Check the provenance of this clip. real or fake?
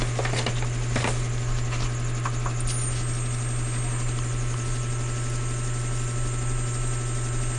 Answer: real